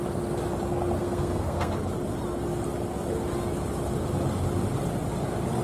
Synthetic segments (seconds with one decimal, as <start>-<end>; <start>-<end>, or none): 1.0-1.8